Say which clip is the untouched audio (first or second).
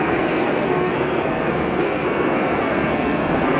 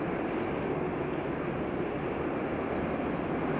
second